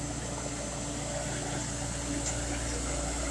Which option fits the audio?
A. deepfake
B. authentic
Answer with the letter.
B